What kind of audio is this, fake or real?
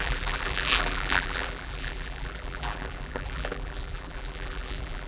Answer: fake